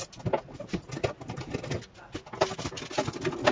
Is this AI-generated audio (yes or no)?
no